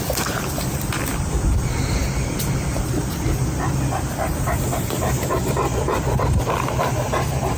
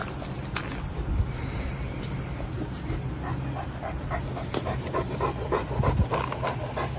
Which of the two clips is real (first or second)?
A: second